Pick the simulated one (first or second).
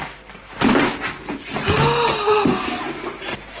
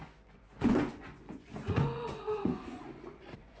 second